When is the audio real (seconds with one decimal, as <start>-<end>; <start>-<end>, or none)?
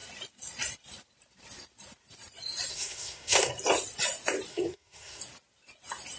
0.0-2.7; 3.5-4.5; 5.2-6.2